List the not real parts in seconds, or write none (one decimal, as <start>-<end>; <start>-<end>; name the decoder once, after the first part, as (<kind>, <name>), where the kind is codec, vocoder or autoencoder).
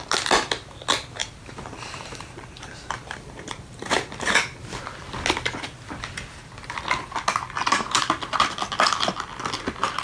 1.2-3.9 (vocoder, BigVGAN v2)